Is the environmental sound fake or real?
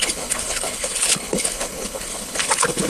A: fake